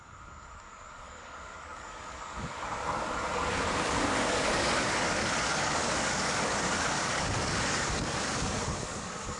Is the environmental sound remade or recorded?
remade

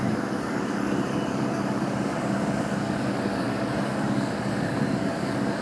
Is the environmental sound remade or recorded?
remade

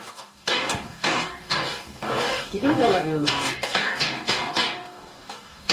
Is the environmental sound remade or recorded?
remade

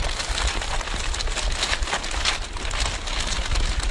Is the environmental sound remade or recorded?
recorded